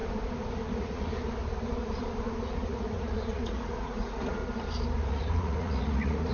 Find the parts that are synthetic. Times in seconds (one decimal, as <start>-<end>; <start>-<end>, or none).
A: 0.7-1.1; 2.4-4.4; 5.0-6.3